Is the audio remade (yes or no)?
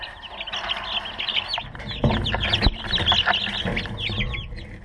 no